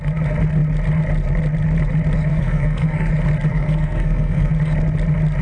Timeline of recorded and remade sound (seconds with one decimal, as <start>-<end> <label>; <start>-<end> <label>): 0.0-2.3 recorded; 2.3-3.1 remade; 3.1-3.5 recorded; 3.5-4.5 remade; 4.5-5.4 recorded